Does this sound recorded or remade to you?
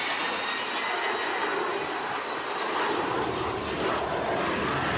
recorded